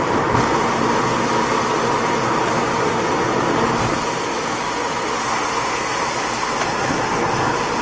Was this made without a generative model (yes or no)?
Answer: yes